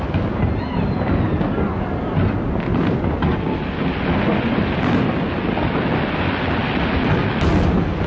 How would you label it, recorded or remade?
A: recorded